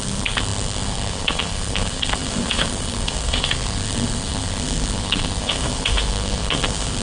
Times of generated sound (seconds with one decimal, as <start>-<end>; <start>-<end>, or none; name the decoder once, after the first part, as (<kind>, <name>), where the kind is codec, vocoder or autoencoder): 0.0-7.0 (codec, SNAC)